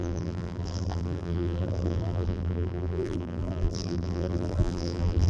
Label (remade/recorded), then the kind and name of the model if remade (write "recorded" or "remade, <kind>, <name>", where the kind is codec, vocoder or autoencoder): remade, vocoder, BigVGAN v2